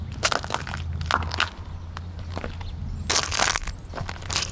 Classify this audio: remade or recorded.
recorded